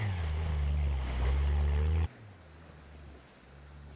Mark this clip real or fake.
real